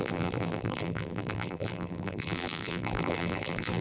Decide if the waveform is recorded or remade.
remade